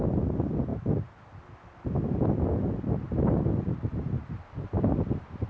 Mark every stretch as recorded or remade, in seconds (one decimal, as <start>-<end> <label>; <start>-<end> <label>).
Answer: 0.0-5.5 recorded